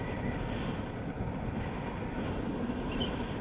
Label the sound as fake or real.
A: real